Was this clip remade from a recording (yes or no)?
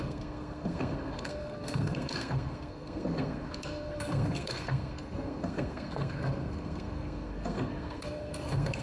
yes